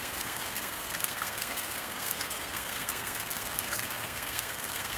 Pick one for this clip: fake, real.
fake